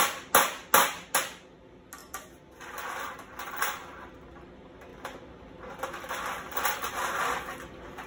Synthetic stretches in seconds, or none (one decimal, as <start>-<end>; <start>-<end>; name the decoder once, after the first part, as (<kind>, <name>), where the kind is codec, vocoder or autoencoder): none